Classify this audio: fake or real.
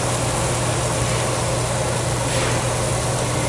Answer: real